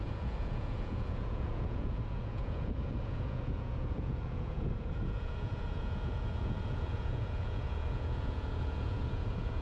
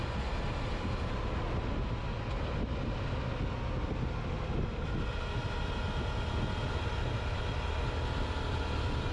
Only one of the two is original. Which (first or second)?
second